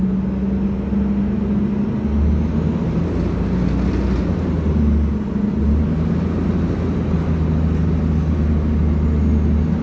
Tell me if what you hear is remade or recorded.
recorded